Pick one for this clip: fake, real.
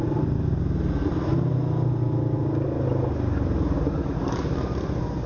real